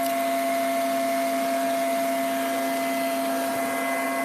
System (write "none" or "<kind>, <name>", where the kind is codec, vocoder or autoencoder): none